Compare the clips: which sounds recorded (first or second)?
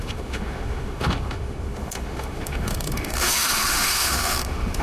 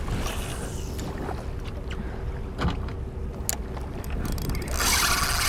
second